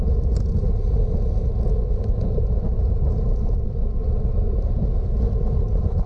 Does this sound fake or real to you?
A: real